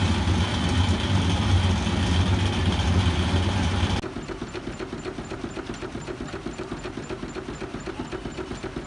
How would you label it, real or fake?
real